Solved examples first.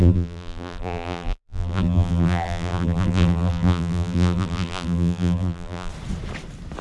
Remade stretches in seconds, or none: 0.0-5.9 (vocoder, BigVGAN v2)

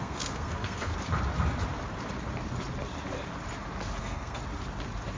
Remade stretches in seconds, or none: 0.0-0.9 (codec, SNAC); 4.0-4.4

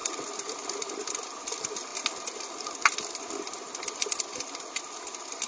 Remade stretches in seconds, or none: none